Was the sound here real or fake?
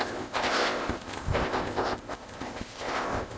fake